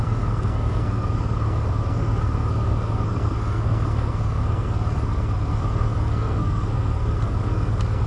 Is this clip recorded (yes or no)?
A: no